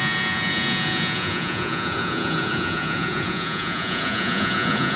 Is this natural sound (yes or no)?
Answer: no